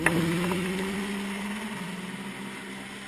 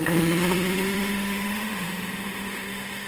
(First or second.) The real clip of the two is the first